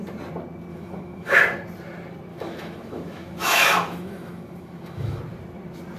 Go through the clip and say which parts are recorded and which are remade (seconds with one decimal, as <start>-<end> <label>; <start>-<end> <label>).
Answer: 0.0-0.7 recorded; 0.7-1.4 remade; 1.4-2.3 recorded; 2.3-5.2 remade; 5.2-6.0 recorded